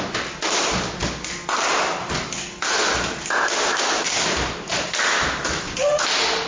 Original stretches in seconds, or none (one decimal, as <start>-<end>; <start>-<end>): 0.0-6.5